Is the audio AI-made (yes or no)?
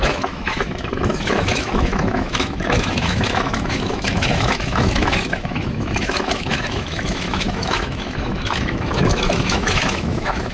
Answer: yes